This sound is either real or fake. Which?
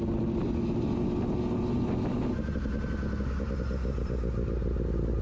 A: real